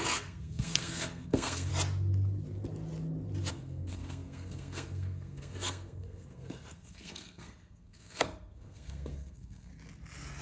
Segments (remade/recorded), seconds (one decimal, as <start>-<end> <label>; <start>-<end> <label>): 0.0-1.7 remade; 1.7-3.5 recorded; 3.5-9.7 remade; 9.7-10.4 recorded